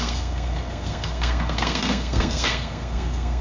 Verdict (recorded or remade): remade